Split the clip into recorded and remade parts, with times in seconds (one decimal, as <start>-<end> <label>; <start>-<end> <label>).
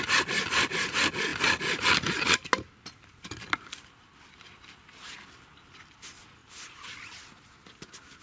0.0-8.2 recorded